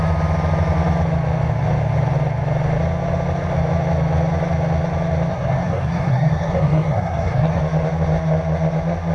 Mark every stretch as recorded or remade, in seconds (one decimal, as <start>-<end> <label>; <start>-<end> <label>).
0.0-5.3 recorded; 5.3-7.6 remade; 7.6-9.1 recorded